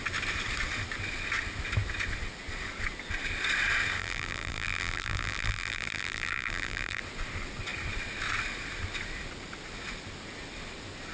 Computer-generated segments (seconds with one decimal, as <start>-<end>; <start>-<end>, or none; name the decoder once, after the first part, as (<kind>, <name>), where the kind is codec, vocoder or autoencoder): 4.0-7.0 (vocoder, BigVGAN v2)